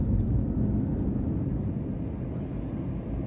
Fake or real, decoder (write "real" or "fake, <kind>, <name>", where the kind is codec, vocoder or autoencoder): real